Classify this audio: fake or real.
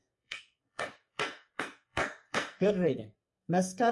fake